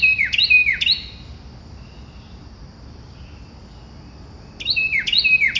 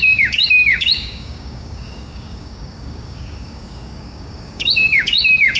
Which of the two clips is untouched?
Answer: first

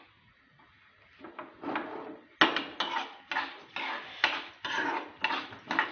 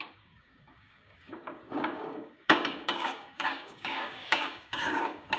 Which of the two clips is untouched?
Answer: first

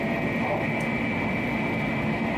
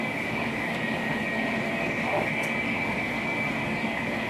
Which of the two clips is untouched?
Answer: first